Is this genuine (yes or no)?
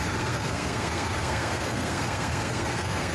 no